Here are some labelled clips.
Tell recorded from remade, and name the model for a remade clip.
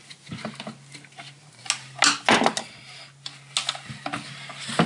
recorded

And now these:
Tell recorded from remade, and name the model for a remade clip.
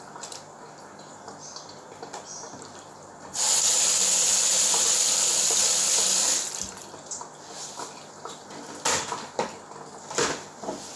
recorded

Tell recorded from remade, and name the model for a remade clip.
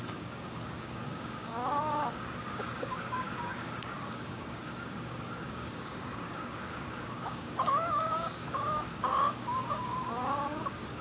remade, codec, DAC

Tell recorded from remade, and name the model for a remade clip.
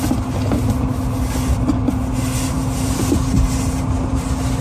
recorded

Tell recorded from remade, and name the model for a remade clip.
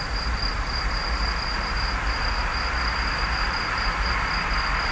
recorded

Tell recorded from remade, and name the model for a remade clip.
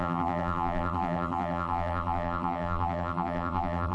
remade, vocoder, BigVGAN v2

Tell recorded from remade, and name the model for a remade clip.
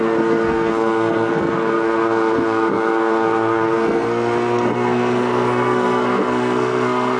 remade, codec, SNAC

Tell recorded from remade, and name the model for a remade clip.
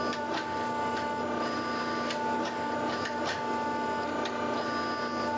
recorded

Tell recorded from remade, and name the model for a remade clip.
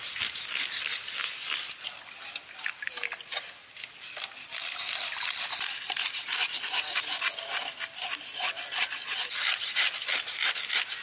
recorded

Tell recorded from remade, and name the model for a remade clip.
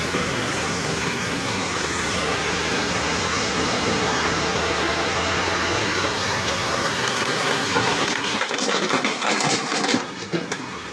remade, codec, SNAC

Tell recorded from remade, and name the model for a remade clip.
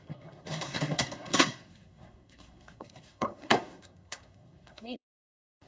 remade, codec, SNAC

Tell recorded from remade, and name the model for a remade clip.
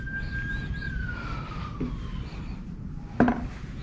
remade, vocoder, BigVGAN v2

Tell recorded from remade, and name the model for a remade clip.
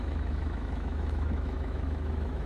remade, autoencoder, DAC-VAE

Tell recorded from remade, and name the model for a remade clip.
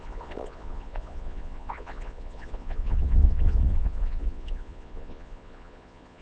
remade, vocoder, Vocos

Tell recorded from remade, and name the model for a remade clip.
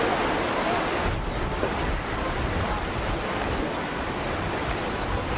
recorded